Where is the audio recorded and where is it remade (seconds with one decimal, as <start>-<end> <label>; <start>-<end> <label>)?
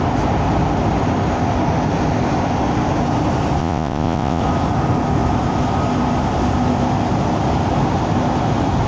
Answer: 0.0-3.6 recorded; 3.6-4.4 remade; 4.4-8.9 recorded